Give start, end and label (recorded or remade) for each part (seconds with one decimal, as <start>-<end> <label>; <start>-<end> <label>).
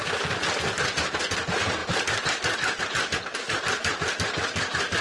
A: 0.0-5.0 recorded